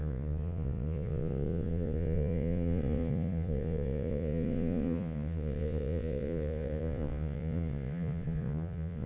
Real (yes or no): no